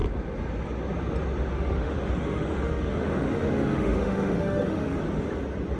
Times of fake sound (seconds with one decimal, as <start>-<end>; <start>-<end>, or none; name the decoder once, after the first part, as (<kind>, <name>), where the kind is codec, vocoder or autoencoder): 1.5-5.0 (autoencoder, DAC-VAE)